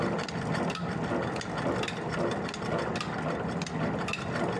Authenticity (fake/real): real